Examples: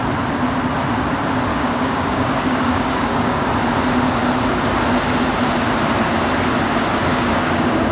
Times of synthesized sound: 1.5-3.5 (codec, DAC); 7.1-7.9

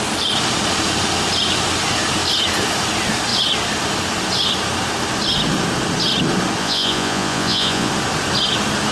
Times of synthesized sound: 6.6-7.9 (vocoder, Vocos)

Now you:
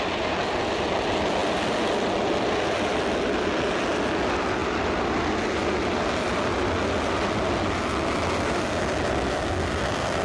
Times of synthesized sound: none

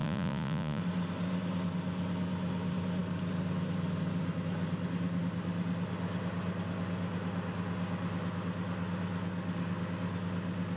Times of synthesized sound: 0.0-0.8 (vocoder, Vocos)

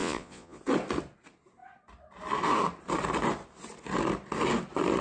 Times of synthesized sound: 0.0-0.6 (vocoder, Vocos)

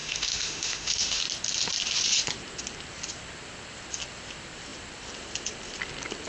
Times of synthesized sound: 0.0-1.2 (autoencoder, DAC-VAE)

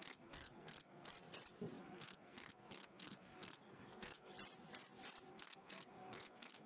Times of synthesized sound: 0.0-1.1 (codec, SNAC); 1.8-4.3; 5.3-6.7

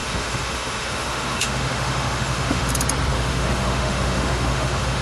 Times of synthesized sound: 0.0-2.7 (autoencoder, DAC-VAE); 3.1-5.0